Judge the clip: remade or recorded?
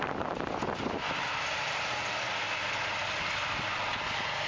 recorded